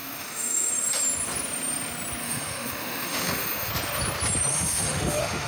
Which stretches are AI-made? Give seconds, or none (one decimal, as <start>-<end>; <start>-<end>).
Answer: 0.0-0.7; 2.2-3.7; 4.5-5.5